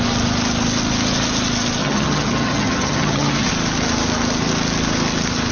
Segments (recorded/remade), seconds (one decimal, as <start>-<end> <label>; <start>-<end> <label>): 0.0-1.8 recorded; 1.8-3.5 remade; 3.5-5.5 recorded